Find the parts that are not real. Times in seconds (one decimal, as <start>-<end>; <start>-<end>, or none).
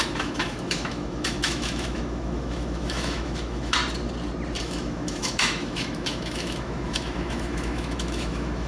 0.0-3.8; 4.6-8.7